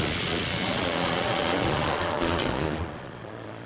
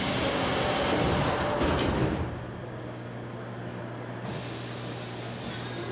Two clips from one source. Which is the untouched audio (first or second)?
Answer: second